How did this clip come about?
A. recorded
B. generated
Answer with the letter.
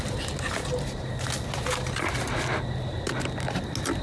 A